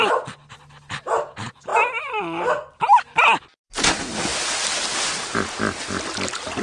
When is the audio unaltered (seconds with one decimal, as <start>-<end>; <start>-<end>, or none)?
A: 0.0-6.6

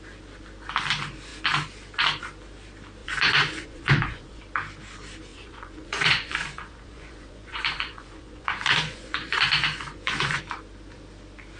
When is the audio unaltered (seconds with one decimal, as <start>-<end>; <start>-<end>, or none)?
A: 0.0-3.0; 4.4-5.3; 10.4-11.6

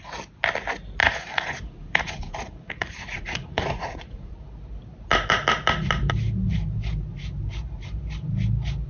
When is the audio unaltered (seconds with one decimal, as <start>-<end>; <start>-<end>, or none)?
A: 0.0-1.0; 4.3-8.9

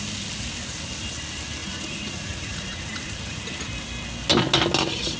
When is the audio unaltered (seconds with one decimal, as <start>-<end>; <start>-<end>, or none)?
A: 0.0-1.6; 3.4-5.2

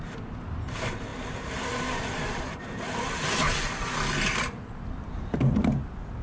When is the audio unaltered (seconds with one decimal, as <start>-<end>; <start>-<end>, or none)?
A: 0.0-6.2

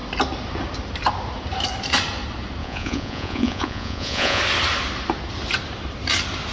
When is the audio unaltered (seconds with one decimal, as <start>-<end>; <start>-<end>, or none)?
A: 0.0-2.6; 4.4-6.5

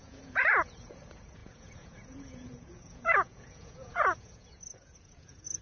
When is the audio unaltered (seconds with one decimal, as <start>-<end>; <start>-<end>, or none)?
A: none